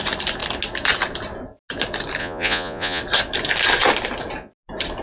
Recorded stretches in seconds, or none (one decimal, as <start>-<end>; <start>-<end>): 0.0-2.2; 3.0-5.0